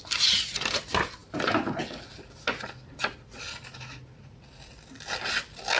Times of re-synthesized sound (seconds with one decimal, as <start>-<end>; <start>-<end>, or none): none